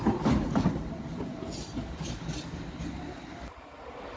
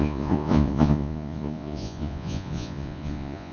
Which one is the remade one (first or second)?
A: second